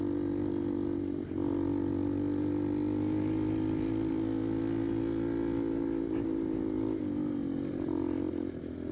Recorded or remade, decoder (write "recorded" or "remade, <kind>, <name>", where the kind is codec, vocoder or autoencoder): recorded